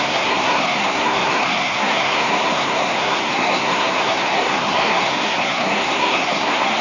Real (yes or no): no